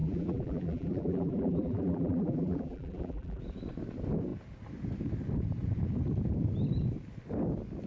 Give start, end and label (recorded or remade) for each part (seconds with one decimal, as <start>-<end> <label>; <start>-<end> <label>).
0.0-3.4 remade; 3.4-7.9 recorded